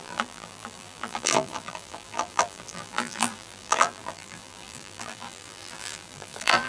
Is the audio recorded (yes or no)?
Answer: no